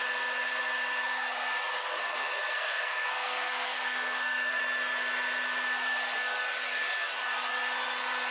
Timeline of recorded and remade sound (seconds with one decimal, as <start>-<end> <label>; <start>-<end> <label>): 0.0-1.8 recorded; 1.8-4.6 remade; 4.6-8.3 recorded